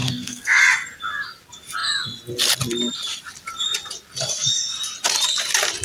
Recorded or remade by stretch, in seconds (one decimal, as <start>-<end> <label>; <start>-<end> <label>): 0.0-0.6 remade; 0.6-5.8 recorded